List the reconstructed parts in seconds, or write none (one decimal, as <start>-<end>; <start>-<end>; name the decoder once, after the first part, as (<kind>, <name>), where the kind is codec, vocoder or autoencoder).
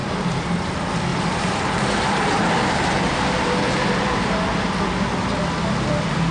0.0-0.7 (vocoder, BigVGAN v2); 1.1-4.7